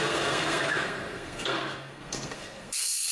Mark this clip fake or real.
fake